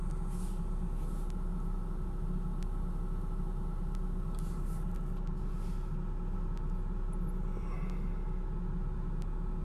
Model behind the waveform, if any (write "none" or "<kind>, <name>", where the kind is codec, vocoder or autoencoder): none